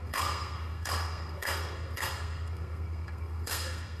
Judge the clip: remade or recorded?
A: remade